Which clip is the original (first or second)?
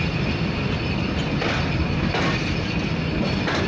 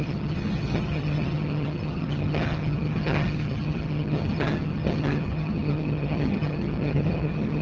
first